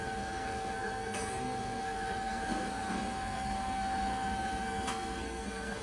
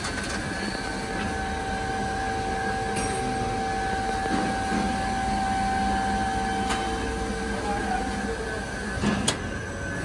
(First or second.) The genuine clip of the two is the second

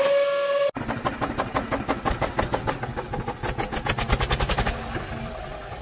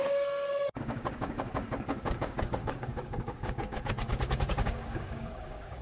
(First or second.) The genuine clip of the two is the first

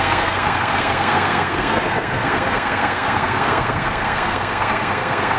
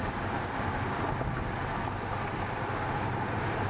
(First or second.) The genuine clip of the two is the second